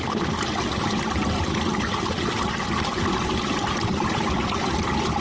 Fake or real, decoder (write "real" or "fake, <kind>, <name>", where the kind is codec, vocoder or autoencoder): real